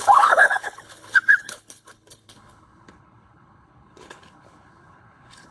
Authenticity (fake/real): fake